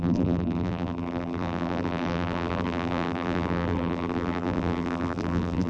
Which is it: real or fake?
fake